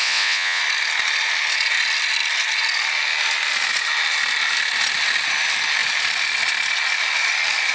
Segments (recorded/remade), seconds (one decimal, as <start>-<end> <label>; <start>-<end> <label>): 0.0-0.6 remade; 0.6-7.7 recorded